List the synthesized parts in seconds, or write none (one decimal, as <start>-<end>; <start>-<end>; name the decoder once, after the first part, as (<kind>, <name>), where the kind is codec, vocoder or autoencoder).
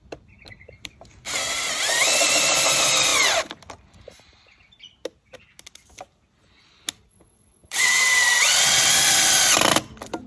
7.1-8.0 (vocoder, WaveNeXt); 8.4-8.9